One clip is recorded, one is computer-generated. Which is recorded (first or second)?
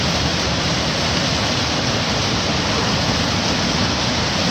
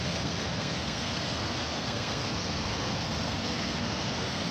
first